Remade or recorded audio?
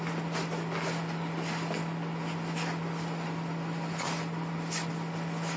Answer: recorded